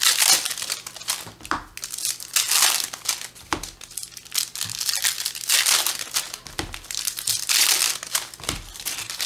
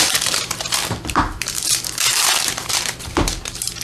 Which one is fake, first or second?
second